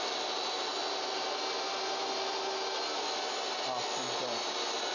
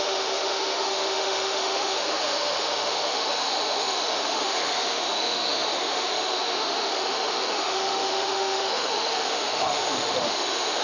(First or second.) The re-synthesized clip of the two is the second